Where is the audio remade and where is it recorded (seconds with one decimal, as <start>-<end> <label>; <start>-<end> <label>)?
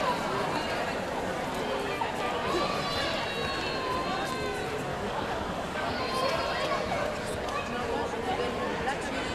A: 0.0-4.9 recorded; 4.9-6.0 remade; 6.0-9.3 recorded